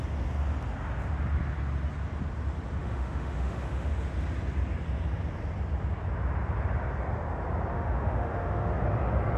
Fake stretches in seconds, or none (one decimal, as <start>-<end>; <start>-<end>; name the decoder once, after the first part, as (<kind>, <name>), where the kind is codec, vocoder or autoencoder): 2.8-3.9 (autoencoder, DAC-VAE); 7.7-8.7